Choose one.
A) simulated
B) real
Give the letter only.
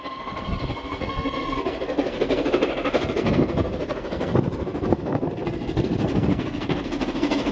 A